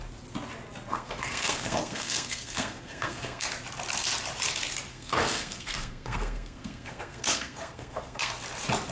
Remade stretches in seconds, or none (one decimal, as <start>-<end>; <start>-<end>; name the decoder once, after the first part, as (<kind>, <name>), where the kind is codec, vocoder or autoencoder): 0.9-3.5 (codec, SNAC); 4.9-8.3